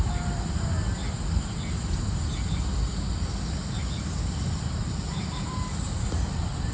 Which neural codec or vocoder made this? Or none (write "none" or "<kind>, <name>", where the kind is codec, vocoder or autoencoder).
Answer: none